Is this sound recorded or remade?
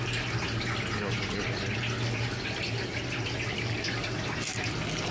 remade